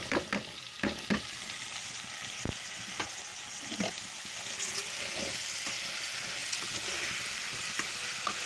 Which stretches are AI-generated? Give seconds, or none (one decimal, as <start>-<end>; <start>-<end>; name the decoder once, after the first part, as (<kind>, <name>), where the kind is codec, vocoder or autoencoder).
none